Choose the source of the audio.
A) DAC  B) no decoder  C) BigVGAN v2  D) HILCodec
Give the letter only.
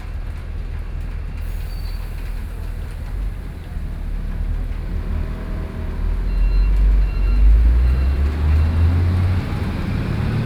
B